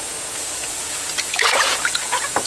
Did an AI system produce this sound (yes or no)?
yes